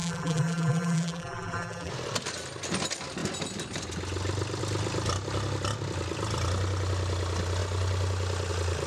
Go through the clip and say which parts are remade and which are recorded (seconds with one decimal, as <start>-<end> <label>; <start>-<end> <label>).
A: 0.0-1.9 remade; 1.9-8.9 recorded